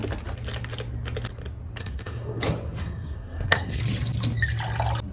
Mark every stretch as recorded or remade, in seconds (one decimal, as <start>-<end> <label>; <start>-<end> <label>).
0.0-1.8 recorded; 1.8-2.4 remade; 2.4-2.8 recorded; 2.8-3.8 remade; 3.8-5.1 recorded